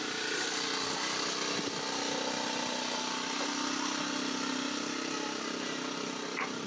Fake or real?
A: real